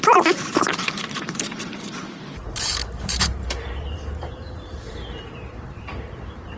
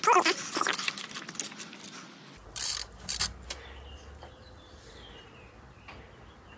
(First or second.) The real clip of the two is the second